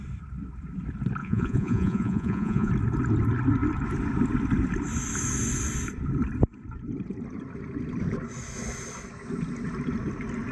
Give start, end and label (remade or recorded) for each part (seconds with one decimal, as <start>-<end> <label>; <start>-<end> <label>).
0.0-1.2 recorded; 1.2-2.7 remade; 2.7-10.5 recorded